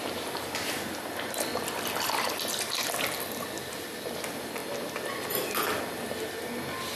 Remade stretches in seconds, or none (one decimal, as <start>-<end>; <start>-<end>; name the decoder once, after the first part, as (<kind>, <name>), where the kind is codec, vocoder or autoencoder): none